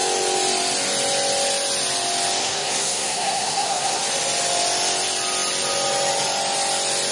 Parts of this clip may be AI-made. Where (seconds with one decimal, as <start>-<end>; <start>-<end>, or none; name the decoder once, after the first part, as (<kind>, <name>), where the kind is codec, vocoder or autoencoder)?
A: 2.4-4.0 (codec, SNAC)